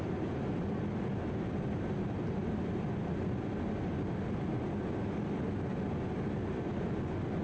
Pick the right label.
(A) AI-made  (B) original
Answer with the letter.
B